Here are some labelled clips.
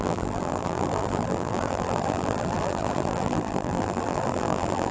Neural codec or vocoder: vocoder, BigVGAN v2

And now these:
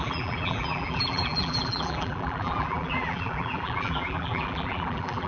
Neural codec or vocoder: vocoder, BigVGAN v2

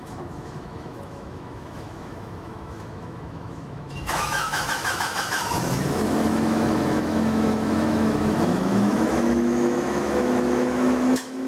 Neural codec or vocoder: autoencoder, DAC-VAE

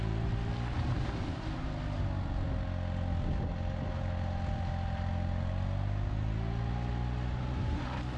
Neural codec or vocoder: none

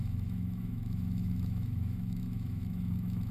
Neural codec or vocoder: autoencoder, DAC-VAE